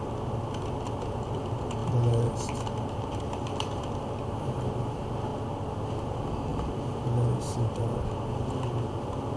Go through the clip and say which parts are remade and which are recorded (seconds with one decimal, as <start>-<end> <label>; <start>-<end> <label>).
0.0-6.5 recorded; 6.5-7.9 remade; 7.9-9.4 recorded